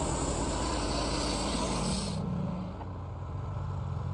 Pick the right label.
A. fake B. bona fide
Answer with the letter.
B